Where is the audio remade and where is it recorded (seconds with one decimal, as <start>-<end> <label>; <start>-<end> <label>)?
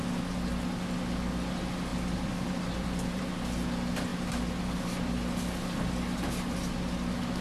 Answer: 0.0-1.9 recorded; 1.9-3.2 remade; 3.2-4.1 recorded; 4.1-4.6 remade; 4.6-7.4 recorded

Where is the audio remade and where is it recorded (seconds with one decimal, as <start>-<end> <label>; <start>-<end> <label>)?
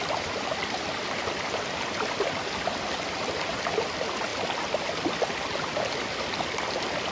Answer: 0.0-4.3 remade; 4.3-6.5 recorded; 6.5-7.1 remade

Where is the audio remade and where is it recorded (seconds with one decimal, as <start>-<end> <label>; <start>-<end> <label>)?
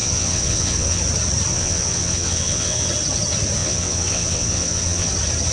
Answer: 0.0-1.0 remade; 1.0-1.5 recorded; 1.5-2.9 remade; 2.9-3.6 recorded; 3.6-5.1 remade; 5.1-5.5 recorded